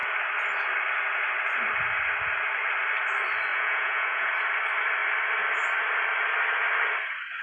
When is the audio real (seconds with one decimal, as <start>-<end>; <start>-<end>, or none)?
0.0-3.5; 4.3-7.4